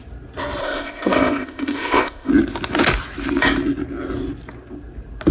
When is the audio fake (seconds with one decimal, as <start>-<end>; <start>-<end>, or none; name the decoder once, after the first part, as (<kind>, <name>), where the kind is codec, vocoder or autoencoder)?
0.6-2.3 (codec, ZipCodec)